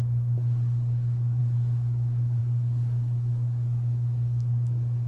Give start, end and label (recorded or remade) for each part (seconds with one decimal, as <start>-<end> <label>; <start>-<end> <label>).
0.0-5.1 remade